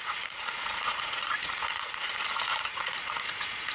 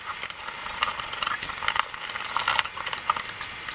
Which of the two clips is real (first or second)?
second